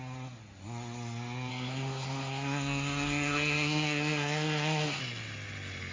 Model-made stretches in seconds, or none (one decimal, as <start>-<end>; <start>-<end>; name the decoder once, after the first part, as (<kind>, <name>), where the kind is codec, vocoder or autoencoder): 1.5-5.0 (codec, SNAC)